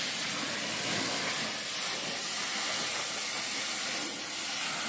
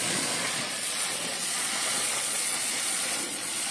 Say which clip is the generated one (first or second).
second